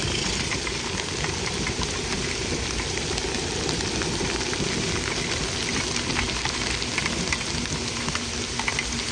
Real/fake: real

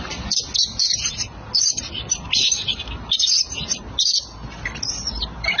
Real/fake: real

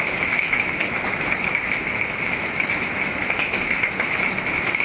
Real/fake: fake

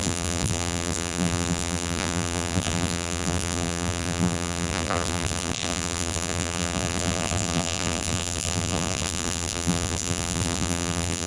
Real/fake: fake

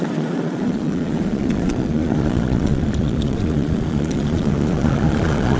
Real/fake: fake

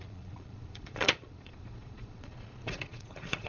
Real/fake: fake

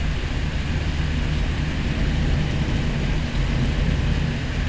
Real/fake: real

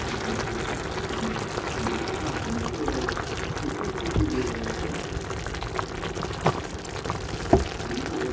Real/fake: real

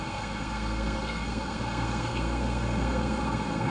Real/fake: fake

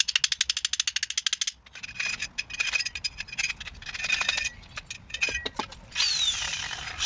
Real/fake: real